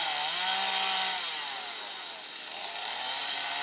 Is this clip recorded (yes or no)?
yes